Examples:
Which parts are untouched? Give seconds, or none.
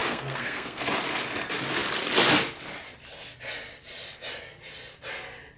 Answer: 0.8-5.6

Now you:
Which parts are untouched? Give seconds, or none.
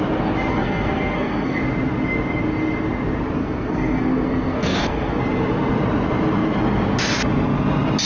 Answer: 0.0-0.5; 1.6-3.4; 5.2-8.1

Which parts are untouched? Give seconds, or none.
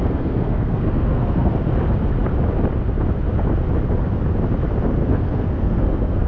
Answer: 1.5-5.0